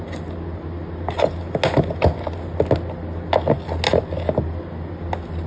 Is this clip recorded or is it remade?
recorded